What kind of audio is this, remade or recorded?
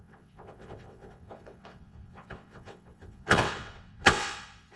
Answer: remade